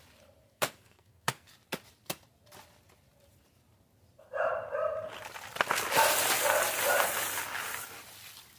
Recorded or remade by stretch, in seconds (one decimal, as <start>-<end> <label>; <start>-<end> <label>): 0.0-0.5 recorded; 0.5-1.5 remade; 1.5-8.6 recorded